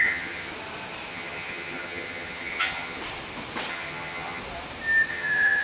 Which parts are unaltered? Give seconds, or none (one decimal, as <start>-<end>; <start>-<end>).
0.5-1.1; 3.0-3.7; 4.4-5.1